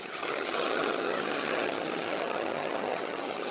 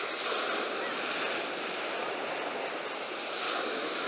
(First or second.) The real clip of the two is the second